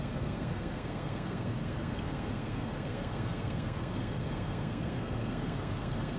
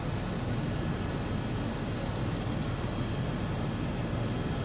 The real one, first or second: second